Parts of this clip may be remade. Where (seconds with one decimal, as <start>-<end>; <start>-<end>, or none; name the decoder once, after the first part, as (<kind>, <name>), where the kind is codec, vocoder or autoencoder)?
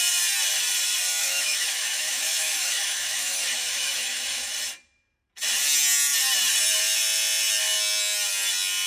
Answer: 1.2-4.5 (autoencoder, DAC-VAE)